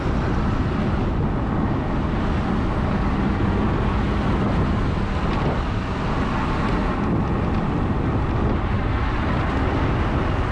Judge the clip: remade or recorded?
recorded